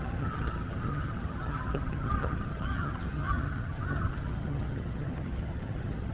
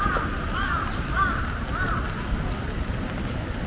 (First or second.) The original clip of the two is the second